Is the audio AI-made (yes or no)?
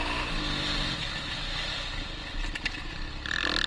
no